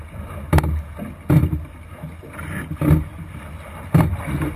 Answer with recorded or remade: recorded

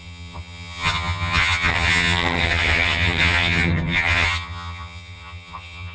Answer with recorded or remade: remade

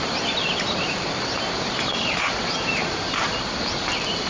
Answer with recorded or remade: recorded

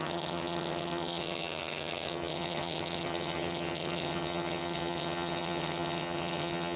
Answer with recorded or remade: remade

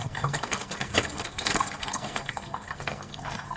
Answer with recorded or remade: remade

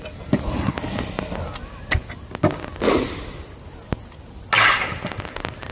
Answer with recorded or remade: recorded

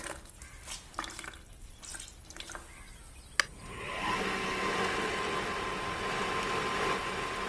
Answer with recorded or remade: recorded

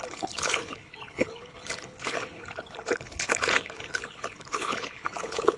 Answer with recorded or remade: remade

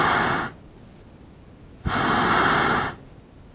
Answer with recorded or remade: recorded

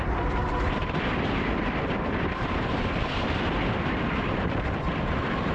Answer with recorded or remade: remade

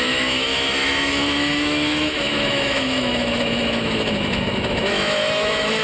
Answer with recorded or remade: remade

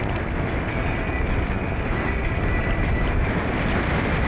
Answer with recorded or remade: recorded